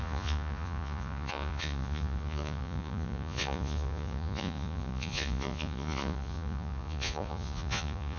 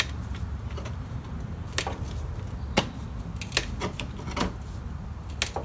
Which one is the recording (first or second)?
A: second